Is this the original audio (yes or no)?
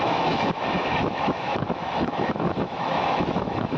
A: no